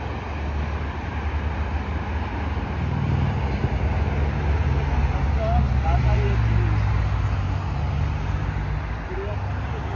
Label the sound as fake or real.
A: real